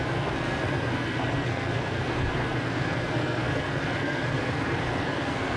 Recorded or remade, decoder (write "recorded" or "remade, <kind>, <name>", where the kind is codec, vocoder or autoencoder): remade, codec, SNAC